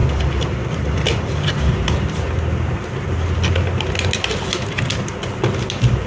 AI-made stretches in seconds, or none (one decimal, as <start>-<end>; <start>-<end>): 0.0-1.6